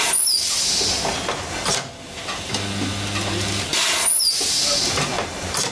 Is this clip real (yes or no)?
yes